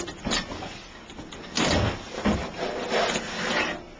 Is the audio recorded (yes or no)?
yes